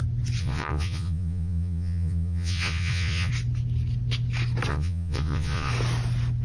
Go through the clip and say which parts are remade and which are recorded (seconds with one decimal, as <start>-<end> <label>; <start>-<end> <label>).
0.0-0.4 recorded; 0.4-3.3 remade; 3.3-4.7 recorded; 4.7-5.7 remade; 5.7-6.4 recorded